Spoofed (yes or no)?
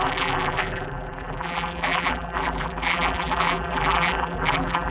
yes